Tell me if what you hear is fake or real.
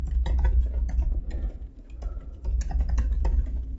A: real